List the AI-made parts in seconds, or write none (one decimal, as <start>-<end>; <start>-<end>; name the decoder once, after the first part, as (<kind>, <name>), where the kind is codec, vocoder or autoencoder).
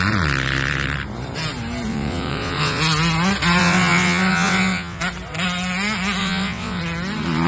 1.9-2.8 (vocoder, WaveNeXt); 3.6-5.0; 6.2-6.8